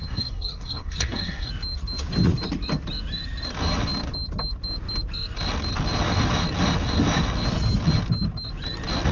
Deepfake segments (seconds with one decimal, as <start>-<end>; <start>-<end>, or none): 0.0-1.5